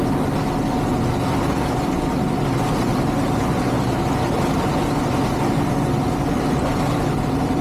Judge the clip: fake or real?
real